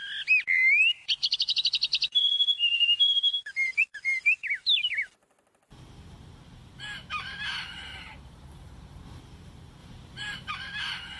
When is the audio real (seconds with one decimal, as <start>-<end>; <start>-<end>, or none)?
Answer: 0.0-2.7; 3.8-7.5; 9.2-9.8; 10.5-11.2